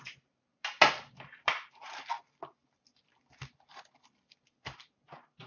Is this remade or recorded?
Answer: recorded